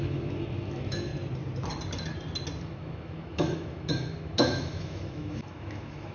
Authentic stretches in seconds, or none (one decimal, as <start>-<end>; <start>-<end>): 1.1-2.6